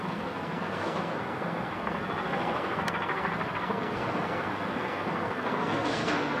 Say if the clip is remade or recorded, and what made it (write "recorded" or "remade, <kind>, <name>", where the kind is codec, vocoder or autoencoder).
remade, codec, SNAC